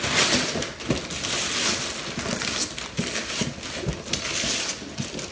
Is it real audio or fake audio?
real